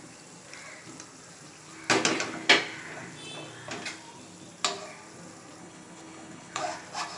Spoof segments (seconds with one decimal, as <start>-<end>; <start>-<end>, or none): 5.6-6.6